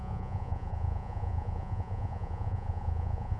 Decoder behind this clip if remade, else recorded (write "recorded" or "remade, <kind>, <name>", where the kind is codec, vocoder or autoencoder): remade, vocoder, Vocos